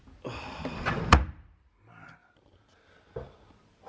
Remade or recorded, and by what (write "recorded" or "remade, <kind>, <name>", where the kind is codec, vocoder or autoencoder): recorded